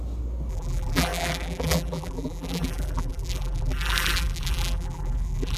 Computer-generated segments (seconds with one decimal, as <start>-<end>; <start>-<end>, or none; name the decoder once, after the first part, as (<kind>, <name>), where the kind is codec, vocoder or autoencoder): 0.5-5.6 (vocoder, BigVGAN v2)